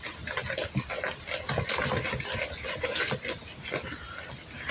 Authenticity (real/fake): real